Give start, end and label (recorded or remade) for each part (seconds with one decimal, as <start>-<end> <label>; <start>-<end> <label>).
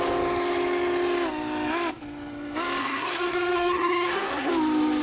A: 0.0-2.8 recorded; 2.8-4.5 remade; 4.5-5.0 recorded